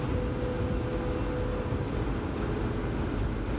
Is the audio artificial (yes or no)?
no